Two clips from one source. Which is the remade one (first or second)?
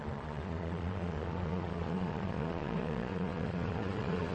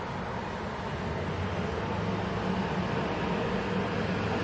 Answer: first